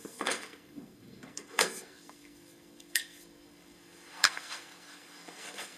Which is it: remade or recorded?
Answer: remade